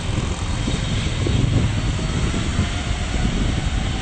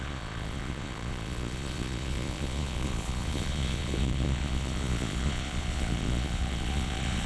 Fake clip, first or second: second